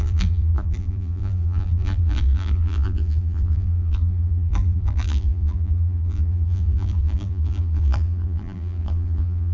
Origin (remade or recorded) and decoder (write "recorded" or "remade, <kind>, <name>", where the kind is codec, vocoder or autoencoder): remade, vocoder, BigVGAN v2